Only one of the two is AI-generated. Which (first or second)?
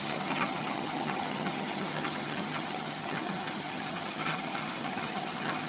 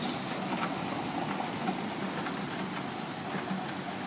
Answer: first